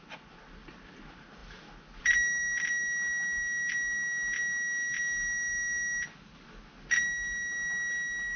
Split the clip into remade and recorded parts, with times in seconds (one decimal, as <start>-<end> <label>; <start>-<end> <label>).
0.0-8.4 recorded